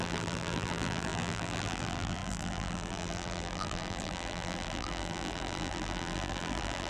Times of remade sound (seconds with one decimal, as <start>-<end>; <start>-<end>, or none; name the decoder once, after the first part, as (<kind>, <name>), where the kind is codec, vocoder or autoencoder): 0.0-6.9 (vocoder, BigVGAN v2)

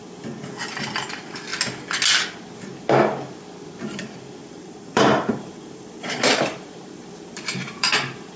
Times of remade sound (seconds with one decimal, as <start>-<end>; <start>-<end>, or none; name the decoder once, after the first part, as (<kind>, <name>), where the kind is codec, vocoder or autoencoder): 4.4-8.4 (vocoder, BigVGAN v2)

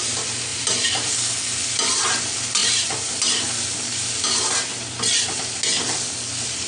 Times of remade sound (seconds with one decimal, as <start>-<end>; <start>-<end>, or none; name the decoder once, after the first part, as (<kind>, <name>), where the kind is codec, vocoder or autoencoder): 0.5-1.1 (vocoder, BigVGAN v2); 2.6-3.3

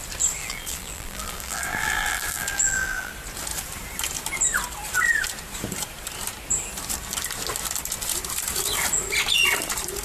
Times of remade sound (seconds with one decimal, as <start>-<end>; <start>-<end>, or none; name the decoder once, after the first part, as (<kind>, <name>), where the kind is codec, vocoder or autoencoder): 0.4-3.1 (vocoder, BigVGAN v2)